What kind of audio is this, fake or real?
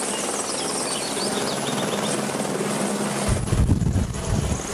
real